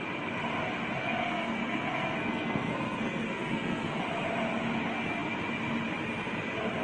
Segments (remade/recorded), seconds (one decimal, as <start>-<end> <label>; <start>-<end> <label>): 0.0-1.0 recorded; 1.0-4.0 remade; 4.0-6.8 recorded